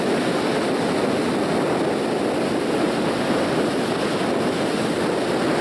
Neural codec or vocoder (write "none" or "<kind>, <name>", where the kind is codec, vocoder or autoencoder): none